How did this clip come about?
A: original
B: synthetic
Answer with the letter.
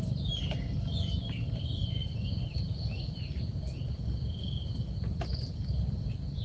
A